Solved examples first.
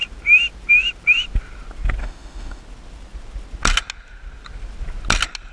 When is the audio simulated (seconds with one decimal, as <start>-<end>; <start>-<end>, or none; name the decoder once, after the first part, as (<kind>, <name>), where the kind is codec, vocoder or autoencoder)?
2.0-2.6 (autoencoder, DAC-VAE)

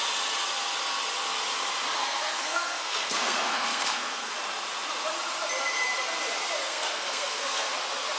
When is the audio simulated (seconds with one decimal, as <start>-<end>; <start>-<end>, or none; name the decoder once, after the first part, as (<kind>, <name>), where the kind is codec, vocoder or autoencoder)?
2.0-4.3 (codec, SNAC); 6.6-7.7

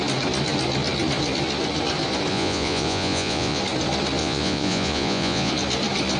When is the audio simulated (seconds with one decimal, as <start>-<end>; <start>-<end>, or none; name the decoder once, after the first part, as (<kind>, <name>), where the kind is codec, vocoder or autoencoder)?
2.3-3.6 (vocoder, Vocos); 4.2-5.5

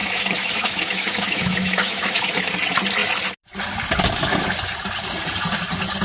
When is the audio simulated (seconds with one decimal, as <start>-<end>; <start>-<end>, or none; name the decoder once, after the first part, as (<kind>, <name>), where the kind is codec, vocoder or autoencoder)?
0.0-2.5 (autoencoder, DAC-VAE)